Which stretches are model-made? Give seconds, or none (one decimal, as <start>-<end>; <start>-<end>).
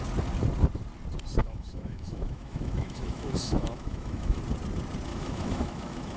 1.4-4.4; 5.1-6.2